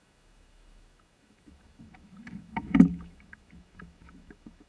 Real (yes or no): no